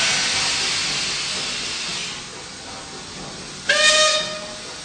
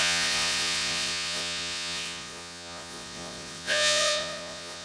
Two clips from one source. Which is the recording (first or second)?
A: first